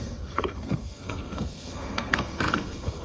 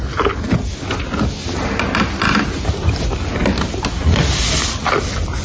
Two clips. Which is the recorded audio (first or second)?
second